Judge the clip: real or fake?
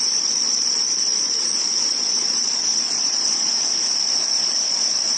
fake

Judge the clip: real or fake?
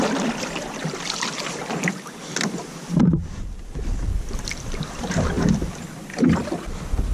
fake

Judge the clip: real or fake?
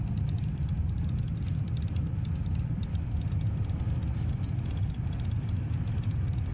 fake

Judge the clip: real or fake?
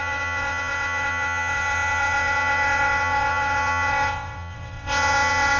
fake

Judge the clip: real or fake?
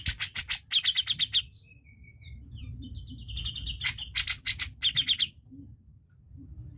real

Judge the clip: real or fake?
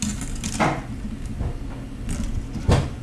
real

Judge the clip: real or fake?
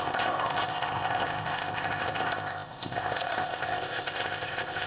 fake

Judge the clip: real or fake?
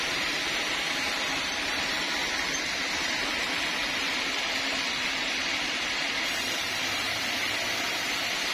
fake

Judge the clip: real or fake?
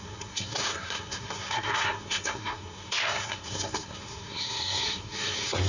fake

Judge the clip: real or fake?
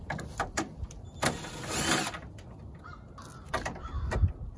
real